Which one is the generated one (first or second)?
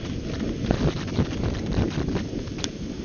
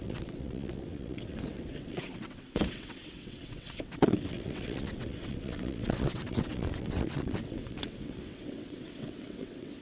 second